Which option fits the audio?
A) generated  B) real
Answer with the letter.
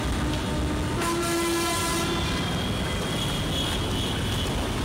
B